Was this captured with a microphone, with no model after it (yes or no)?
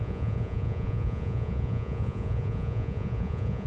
no